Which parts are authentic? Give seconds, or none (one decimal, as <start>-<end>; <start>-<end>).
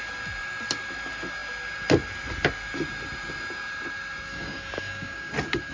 0.0-4.3; 5.3-5.7